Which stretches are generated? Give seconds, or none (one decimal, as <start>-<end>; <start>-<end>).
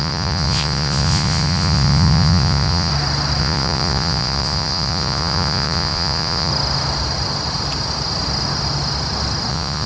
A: 0.0-2.9; 3.4-6.5; 9.5-9.9